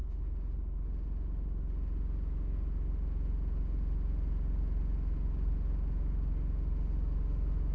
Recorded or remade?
recorded